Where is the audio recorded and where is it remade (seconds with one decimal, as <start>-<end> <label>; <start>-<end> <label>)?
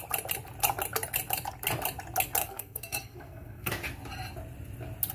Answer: 0.0-2.4 recorded; 2.4-3.7 remade; 3.7-5.1 recorded